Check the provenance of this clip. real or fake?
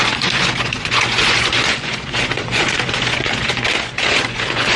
fake